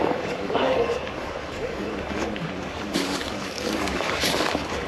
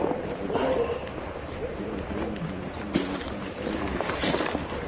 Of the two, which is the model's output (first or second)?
first